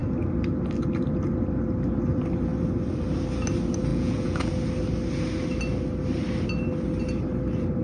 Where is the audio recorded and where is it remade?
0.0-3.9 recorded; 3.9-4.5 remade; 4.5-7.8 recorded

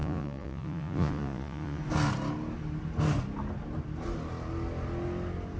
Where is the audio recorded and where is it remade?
0.0-1.8 remade; 1.8-5.6 recorded

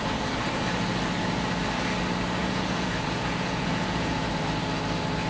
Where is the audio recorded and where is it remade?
0.0-2.4 recorded; 2.4-4.3 remade; 4.3-5.3 recorded

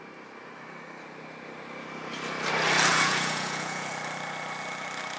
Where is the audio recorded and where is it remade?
0.0-2.9 recorded; 2.9-3.9 remade; 3.9-5.2 recorded

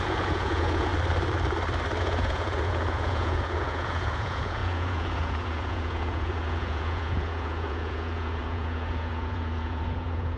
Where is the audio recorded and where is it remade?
0.0-0.9 remade; 0.9-2.0 recorded; 2.0-10.4 remade

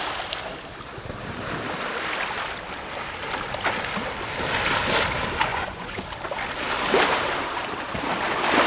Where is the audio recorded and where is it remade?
0.0-5.5 recorded; 5.5-6.0 remade; 6.0-8.7 recorded